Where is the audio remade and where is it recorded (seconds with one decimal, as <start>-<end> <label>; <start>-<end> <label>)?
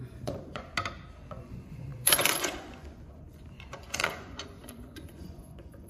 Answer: 0.0-0.7 remade; 0.7-1.3 recorded; 1.3-5.9 remade